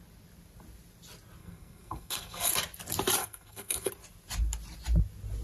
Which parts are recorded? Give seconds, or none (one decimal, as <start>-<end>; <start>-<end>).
0.0-1.4; 2.5-3.2; 3.9-5.4